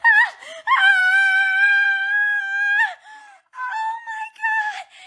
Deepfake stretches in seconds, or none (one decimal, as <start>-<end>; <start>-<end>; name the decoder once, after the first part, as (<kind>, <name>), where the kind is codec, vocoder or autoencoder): 1.0-2.4 (codec, SNAC); 3.2-3.7